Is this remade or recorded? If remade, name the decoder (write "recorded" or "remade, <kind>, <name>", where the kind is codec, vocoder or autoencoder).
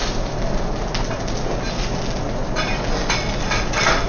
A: recorded